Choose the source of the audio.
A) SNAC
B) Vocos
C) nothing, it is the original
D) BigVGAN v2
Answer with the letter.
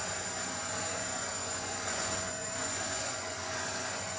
B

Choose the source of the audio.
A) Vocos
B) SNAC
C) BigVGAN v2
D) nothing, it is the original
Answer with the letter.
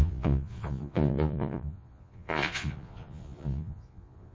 A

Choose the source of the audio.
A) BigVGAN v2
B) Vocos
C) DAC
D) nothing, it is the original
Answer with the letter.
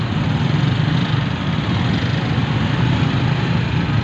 D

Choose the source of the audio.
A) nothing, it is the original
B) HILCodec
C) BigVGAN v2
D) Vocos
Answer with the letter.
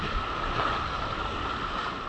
A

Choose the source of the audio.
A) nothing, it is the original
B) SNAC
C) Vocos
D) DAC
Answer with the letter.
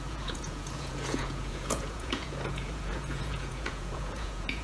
C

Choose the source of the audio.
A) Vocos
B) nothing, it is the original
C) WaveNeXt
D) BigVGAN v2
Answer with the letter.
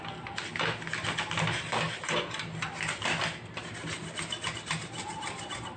B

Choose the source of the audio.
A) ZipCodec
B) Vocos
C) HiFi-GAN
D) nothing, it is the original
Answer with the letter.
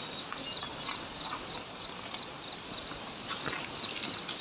D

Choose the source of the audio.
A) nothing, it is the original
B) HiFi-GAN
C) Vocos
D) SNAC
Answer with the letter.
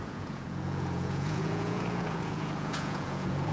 C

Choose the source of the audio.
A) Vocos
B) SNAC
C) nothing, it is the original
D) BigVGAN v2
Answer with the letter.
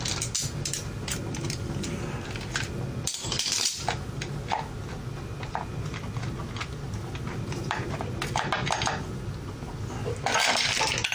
C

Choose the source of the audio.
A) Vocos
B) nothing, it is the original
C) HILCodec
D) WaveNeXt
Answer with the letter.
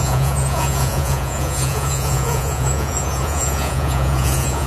A